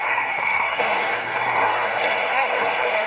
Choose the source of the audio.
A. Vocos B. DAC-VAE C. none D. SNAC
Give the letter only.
D